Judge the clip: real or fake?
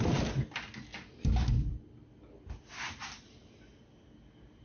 real